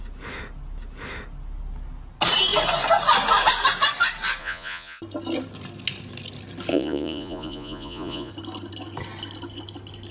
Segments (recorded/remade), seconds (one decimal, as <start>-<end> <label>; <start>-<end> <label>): 0.0-4.4 recorded; 4.4-5.0 remade; 5.0-6.7 recorded; 6.7-8.3 remade; 8.3-10.1 recorded